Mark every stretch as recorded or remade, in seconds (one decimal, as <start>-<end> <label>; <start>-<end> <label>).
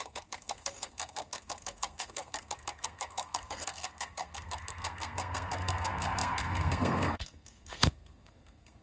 0.0-8.8 remade